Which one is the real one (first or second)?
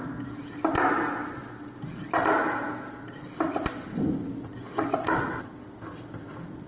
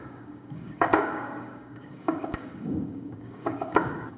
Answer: first